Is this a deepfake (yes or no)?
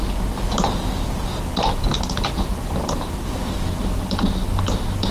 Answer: no